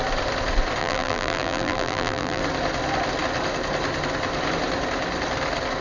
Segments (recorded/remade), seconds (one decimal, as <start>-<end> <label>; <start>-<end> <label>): 0.0-0.8 recorded; 0.8-2.4 remade; 2.4-5.8 recorded